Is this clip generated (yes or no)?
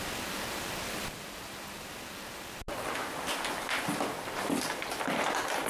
no